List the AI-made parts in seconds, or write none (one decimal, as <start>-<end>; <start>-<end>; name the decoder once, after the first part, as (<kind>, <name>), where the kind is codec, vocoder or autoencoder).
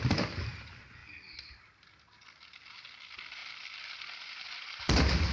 1.0-1.6 (vocoder, BigVGAN v2)